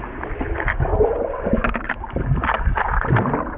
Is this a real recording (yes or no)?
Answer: yes